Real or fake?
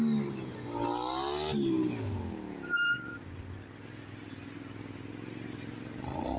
real